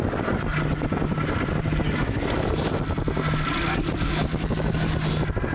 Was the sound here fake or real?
real